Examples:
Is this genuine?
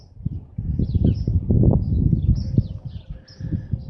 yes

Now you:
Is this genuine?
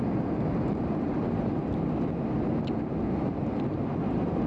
no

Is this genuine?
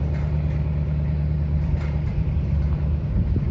no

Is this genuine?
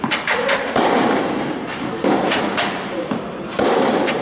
yes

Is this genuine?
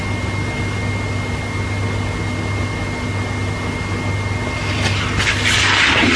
yes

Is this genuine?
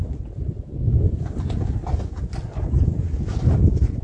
yes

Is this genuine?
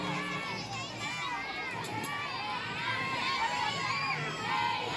yes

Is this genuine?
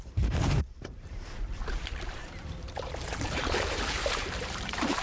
no